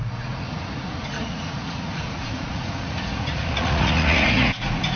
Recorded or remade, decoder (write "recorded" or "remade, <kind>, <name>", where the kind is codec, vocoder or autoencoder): remade, vocoder, Vocos